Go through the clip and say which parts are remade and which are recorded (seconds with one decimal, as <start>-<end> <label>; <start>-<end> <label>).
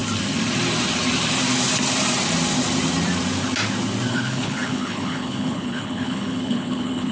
0.0-4.1 recorded; 4.1-7.1 remade